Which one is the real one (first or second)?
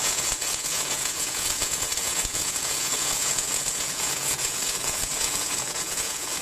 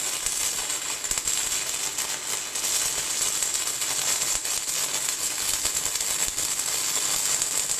second